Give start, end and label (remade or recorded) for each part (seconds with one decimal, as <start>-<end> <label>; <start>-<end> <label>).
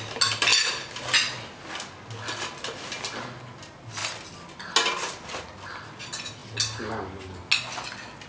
0.0-8.3 recorded